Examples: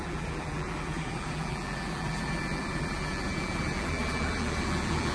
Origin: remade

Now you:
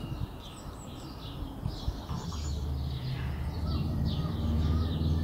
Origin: recorded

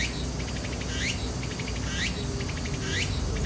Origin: recorded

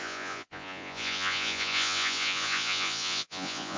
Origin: remade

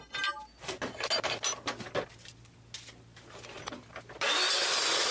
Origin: recorded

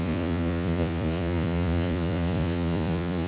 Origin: remade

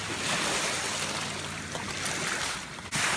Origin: remade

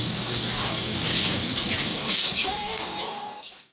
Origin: remade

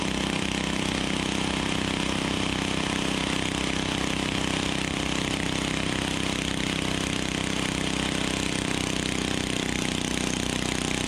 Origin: recorded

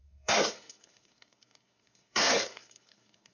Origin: remade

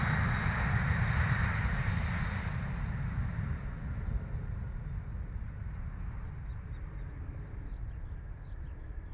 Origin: recorded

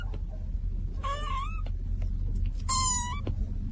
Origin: recorded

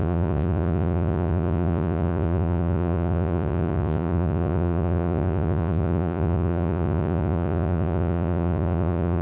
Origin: remade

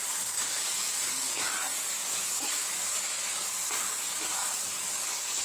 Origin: remade